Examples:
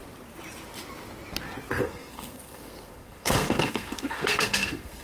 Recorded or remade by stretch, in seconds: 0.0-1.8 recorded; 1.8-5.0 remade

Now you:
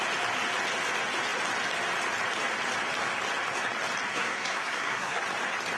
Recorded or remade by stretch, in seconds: 0.0-4.1 recorded; 4.1-5.2 remade; 5.2-5.8 recorded

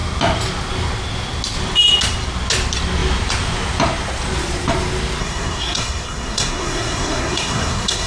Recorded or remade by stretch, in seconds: 0.0-5.2 recorded; 5.2-8.1 remade

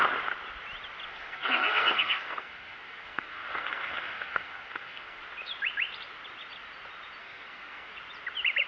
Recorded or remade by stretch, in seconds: 0.0-1.1 recorded; 1.1-5.2 remade; 5.2-7.2 recorded; 7.2-7.9 remade; 7.9-8.7 recorded

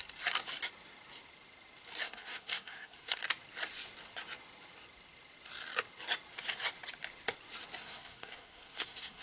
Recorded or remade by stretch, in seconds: 0.0-2.0 recorded; 2.0-3.2 remade; 3.2-7.8 recorded; 7.8-9.2 remade

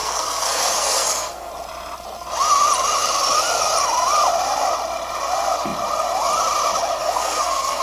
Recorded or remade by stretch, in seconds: 0.0-1.5 remade; 1.5-7.0 recorded; 7.0-7.8 remade

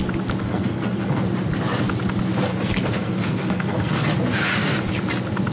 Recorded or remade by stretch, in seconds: 0.0-0.4 recorded; 0.4-1.2 remade; 1.2-2.5 recorded; 2.5-4.0 remade; 4.0-5.5 recorded

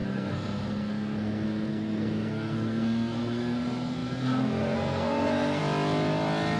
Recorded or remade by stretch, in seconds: 0.0-5.6 remade; 5.6-6.6 recorded